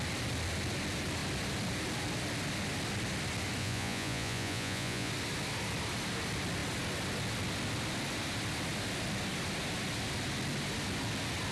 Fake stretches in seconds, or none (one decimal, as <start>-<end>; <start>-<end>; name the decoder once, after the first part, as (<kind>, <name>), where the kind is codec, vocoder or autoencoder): 3.6-5.1 (vocoder, Vocos)